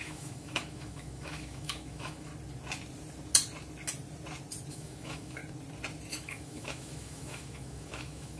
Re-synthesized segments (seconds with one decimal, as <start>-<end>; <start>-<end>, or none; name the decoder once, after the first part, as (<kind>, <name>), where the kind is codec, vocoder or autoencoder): 0.0-2.3 (autoencoder, DAC-VAE); 4.7-5.4; 6.1-8.4